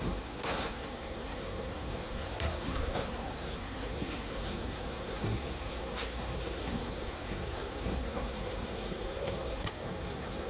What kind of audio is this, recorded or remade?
remade